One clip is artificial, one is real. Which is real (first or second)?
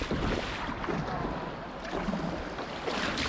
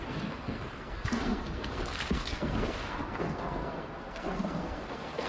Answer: first